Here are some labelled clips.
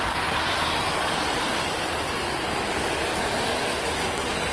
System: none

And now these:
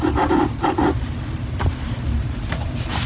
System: vocoder, BigVGAN v2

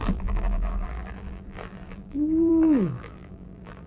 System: vocoder, BigVGAN v2